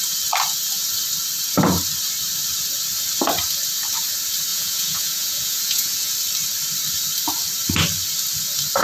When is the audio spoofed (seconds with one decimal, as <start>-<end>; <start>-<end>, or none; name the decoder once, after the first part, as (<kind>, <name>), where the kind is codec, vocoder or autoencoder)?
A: 4.5-6.1 (vocoder, Vocos)